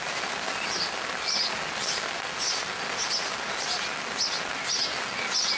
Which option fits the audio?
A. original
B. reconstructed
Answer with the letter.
A